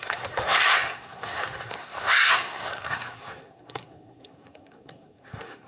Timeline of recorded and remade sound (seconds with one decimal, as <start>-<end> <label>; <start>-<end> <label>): 0.0-5.7 remade